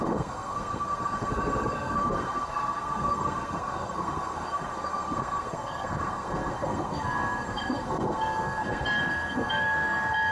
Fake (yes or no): yes